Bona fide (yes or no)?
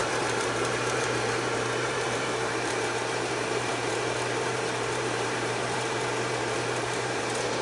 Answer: no